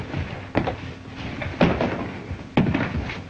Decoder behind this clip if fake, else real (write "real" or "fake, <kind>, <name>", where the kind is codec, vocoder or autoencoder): real